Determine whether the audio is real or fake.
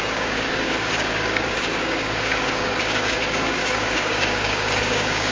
fake